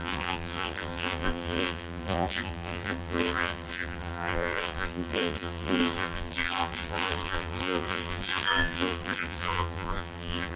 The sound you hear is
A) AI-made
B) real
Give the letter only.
A